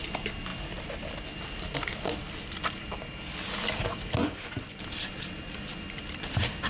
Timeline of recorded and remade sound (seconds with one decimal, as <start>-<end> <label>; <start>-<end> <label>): 0.0-4.2 recorded; 4.2-4.8 remade; 4.8-6.7 recorded